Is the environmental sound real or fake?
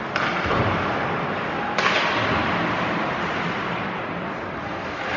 real